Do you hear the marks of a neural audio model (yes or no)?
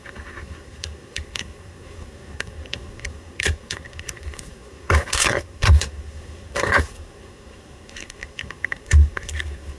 yes